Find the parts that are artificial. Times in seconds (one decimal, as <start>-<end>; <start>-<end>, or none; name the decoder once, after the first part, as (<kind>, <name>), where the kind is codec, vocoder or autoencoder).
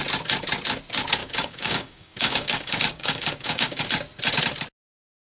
1.2-3.8 (codec, DAC)